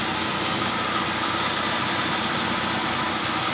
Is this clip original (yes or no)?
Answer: yes